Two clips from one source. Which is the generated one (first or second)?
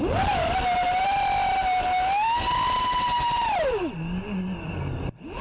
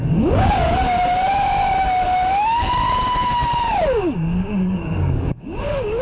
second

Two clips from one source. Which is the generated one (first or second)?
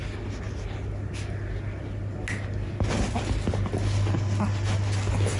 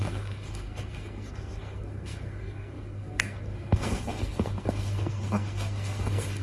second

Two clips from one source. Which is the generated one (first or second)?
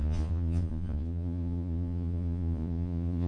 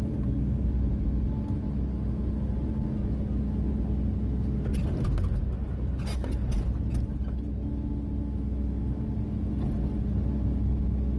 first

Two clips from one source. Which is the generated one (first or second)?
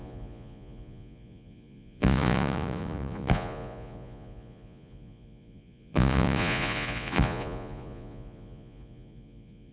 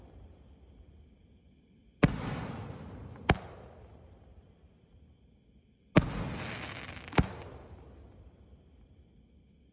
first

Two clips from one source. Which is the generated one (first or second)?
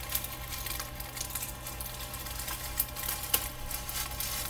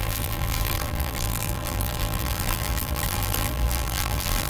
second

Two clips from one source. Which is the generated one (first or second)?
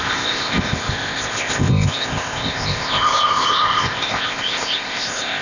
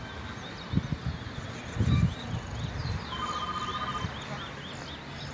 first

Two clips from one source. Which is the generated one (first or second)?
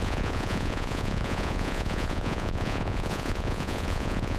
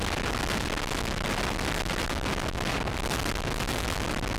first